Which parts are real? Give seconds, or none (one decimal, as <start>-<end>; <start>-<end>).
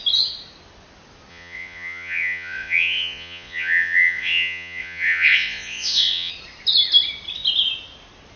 0.0-1.3; 6.3-8.4